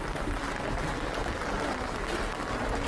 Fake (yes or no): no